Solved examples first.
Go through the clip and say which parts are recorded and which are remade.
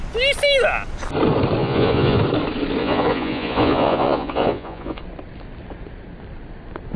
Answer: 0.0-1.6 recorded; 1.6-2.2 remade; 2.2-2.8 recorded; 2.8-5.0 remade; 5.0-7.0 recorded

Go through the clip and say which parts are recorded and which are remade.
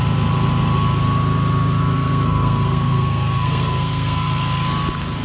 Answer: 0.0-1.9 recorded; 1.9-4.3 remade; 4.3-5.2 recorded